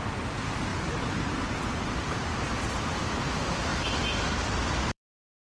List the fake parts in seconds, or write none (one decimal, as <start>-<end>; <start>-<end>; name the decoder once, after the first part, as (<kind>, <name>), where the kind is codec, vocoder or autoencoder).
0.0-3.7 (vocoder, BigVGAN v2); 4.8-5.5